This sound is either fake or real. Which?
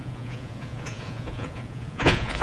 fake